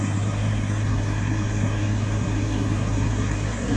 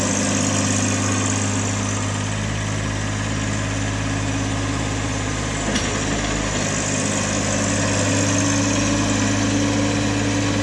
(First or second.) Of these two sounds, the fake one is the first